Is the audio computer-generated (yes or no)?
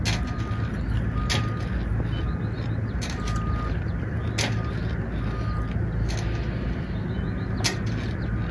no